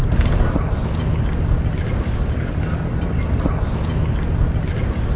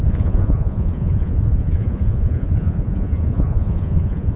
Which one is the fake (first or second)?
second